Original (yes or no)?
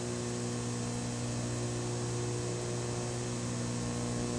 yes